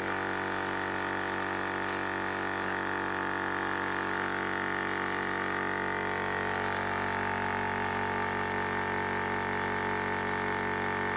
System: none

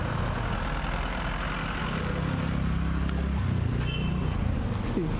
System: none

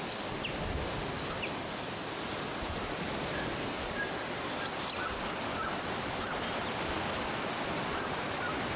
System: none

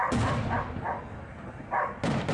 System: none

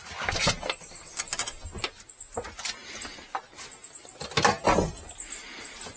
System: none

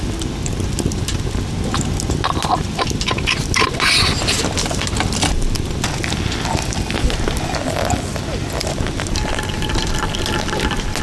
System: none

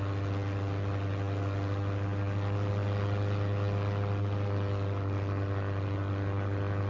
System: none